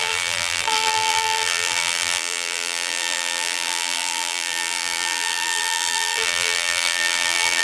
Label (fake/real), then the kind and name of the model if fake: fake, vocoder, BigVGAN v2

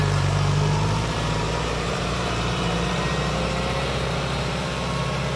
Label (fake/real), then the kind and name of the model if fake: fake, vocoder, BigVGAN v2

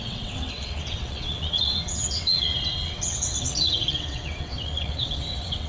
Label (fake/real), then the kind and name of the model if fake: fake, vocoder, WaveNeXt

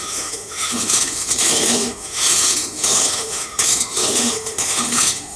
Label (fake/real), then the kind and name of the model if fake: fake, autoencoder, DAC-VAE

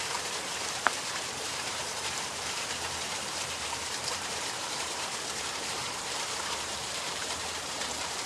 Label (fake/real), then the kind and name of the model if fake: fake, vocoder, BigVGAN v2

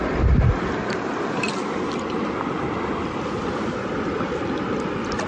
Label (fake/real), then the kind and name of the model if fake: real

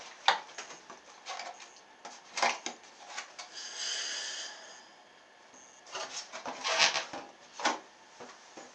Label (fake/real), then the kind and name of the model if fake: real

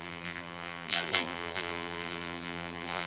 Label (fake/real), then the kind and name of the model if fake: fake, vocoder, BigVGAN v2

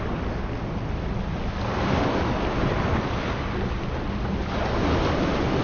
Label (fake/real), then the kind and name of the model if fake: real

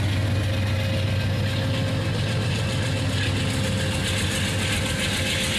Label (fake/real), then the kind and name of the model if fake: real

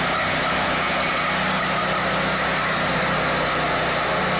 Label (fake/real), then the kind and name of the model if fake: real